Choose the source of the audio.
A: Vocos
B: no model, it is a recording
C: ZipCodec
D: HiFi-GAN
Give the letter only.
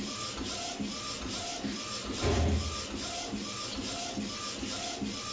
B